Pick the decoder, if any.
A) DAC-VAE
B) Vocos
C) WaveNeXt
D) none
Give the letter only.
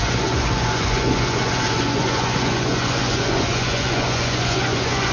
B